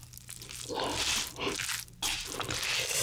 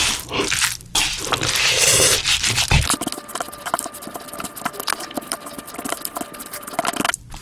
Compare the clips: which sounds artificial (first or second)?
second